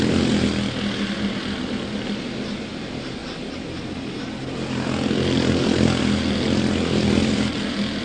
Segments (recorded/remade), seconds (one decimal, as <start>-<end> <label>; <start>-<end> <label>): 0.0-8.0 recorded